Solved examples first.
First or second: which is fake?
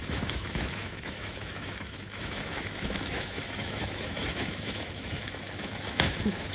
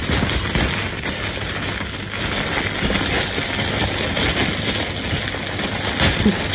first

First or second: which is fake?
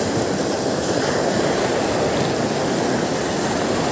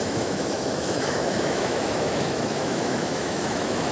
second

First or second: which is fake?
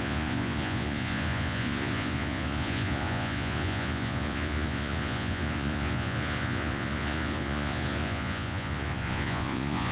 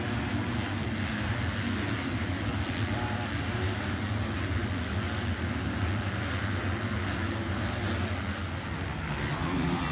first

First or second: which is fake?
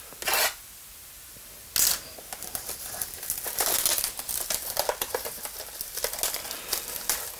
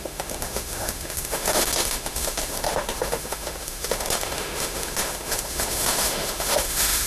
second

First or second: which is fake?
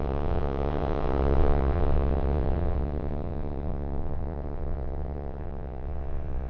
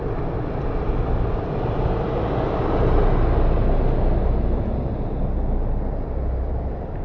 first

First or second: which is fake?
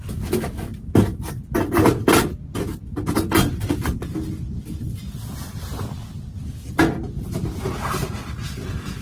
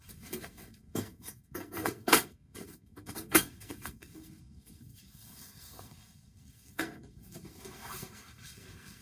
second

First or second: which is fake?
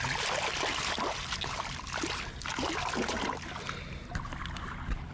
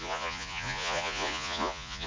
second